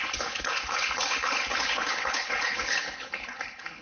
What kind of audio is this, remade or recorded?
remade